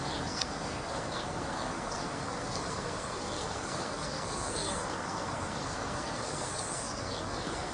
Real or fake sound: fake